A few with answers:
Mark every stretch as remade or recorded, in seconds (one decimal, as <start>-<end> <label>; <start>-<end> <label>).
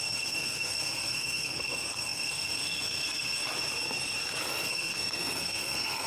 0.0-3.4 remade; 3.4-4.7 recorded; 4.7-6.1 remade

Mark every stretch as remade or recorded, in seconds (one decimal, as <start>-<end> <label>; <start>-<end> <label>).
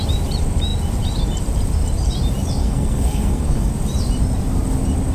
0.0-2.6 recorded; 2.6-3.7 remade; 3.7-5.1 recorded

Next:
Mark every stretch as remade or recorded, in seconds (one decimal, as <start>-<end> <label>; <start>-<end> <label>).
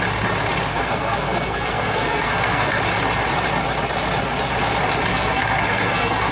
0.0-0.7 recorded; 0.7-2.8 remade; 2.8-5.1 recorded; 5.1-6.3 remade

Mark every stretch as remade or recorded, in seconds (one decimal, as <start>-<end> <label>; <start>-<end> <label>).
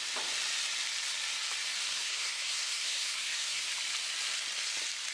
0.0-1.9 recorded; 1.9-3.7 remade; 3.7-5.1 recorded